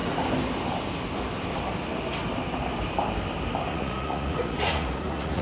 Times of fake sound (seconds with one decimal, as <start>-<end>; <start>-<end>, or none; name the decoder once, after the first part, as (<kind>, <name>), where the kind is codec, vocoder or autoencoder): 3.7-5.4 (vocoder, Vocos)